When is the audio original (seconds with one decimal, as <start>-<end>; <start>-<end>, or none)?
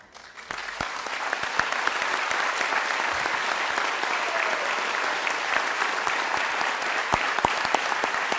0.0-0.6; 1.5-7.1